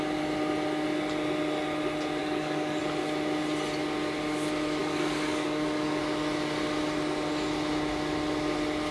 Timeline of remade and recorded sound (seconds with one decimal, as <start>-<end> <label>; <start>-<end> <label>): 0.0-2.2 recorded; 2.2-2.8 remade; 2.8-4.8 recorded; 4.8-6.0 remade; 6.0-8.9 recorded